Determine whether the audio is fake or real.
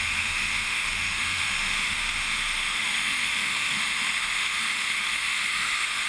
fake